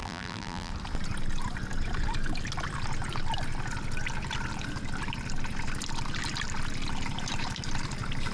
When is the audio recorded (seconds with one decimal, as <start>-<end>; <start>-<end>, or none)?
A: 0.7-8.3